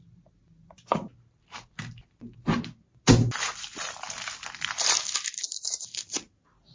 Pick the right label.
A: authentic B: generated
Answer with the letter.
A